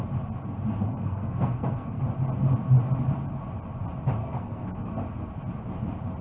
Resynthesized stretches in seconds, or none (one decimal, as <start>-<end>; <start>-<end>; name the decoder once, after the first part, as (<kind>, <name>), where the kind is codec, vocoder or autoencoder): 0.9-2.0 (codec, SNAC); 4.2-4.9